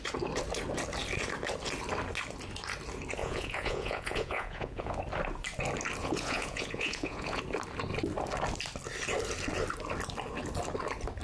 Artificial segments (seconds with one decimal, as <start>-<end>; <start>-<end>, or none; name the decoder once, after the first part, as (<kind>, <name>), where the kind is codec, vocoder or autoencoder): 3.2-5.0 (vocoder, Vocos); 6.0-7.4